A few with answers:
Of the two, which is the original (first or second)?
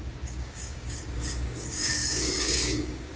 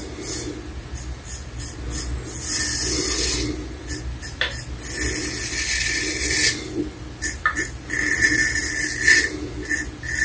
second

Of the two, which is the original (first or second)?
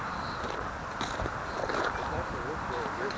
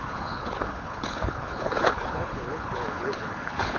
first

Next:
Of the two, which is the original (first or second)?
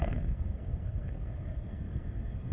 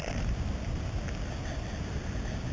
second